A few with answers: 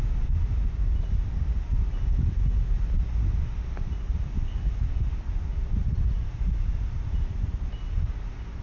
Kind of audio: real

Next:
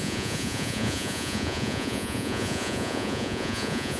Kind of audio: fake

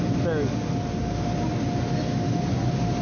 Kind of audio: real